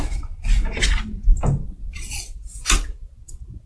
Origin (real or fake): real